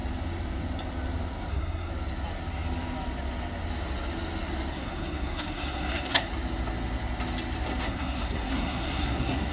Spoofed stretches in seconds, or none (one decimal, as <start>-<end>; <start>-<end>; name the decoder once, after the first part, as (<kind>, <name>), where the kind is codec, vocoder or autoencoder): 1.5-1.9 (codec, SNAC); 4.7-6.3; 7.8-9.5